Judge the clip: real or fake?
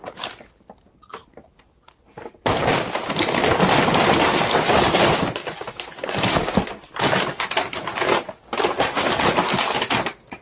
real